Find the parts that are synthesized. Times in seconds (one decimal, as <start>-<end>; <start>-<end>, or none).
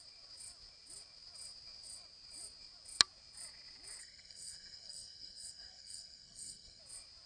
4.0-6.8